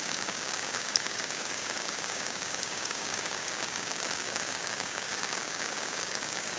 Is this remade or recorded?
remade